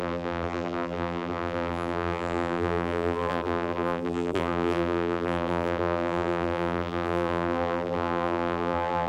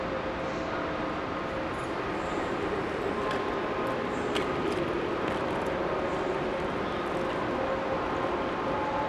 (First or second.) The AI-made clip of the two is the first